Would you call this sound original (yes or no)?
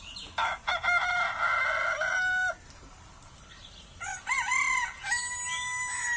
yes